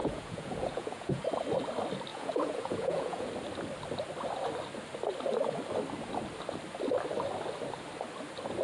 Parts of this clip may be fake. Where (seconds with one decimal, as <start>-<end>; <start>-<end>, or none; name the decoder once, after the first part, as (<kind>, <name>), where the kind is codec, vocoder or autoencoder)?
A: 0.0-1.2 (vocoder, Vocos); 2.1-3.3